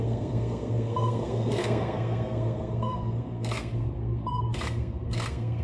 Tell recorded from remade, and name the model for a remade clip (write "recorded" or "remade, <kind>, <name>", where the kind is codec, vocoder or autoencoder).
remade, codec, SNAC